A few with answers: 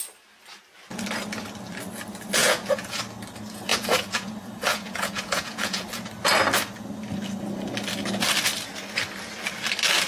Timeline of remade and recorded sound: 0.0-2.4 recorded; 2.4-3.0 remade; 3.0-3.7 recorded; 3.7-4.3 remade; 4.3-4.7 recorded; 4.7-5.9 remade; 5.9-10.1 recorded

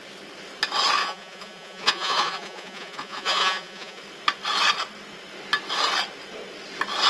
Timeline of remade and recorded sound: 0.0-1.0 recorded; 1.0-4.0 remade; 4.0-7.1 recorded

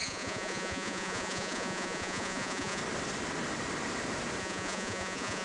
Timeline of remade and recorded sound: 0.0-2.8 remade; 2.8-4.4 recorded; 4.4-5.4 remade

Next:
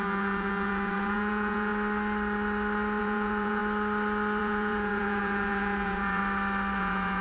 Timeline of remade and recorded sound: 0.0-1.7 remade; 1.7-3.0 recorded; 3.0-3.6 remade; 3.6-4.4 recorded; 4.4-6.2 remade; 6.2-6.8 recorded; 6.8-7.2 remade

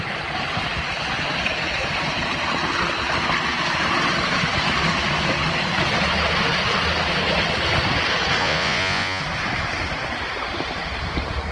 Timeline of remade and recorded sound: 0.0-8.4 recorded; 8.4-9.2 remade; 9.2-11.5 recorded